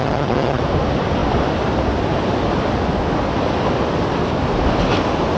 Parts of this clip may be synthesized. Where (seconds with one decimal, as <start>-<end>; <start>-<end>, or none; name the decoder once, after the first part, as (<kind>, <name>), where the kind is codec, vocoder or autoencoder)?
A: 0.0-0.6 (vocoder, HiFi-GAN)